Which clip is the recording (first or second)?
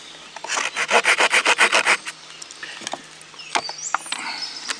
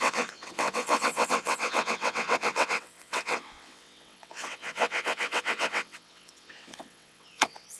first